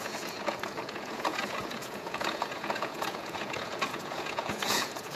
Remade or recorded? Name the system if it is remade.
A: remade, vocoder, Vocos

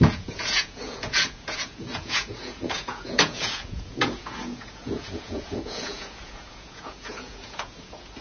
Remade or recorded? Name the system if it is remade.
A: remade, vocoder, Vocos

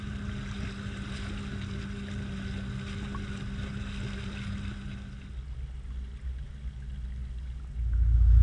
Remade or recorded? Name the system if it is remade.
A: recorded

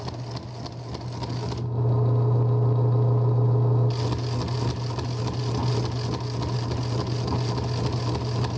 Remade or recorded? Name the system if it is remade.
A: recorded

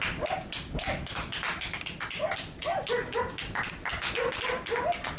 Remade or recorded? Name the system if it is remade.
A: recorded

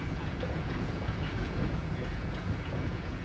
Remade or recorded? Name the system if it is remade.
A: remade, vocoder, Vocos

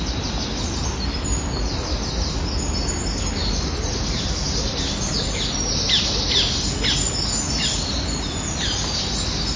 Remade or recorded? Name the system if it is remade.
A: recorded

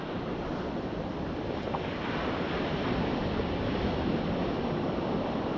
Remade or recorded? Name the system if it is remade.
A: recorded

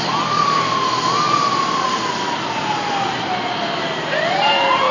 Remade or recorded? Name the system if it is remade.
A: recorded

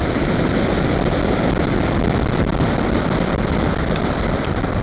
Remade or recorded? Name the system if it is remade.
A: recorded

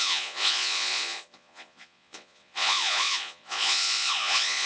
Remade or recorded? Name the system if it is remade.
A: remade, vocoder, Vocos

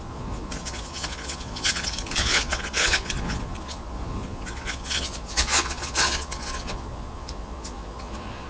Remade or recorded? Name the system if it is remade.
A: remade, vocoder, Vocos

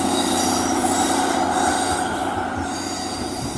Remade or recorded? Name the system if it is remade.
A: recorded